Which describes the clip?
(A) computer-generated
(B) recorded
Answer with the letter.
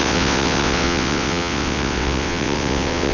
A